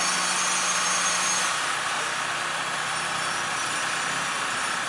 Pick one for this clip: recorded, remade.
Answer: recorded